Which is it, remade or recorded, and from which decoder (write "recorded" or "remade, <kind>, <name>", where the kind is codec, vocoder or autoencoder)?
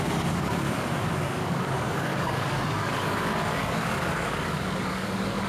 remade, codec, DAC